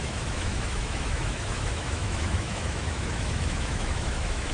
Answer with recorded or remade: remade